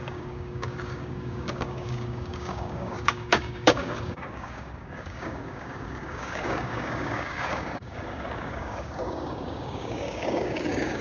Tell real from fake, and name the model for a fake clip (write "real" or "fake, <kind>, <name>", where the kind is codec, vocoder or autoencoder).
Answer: fake, codec, DAC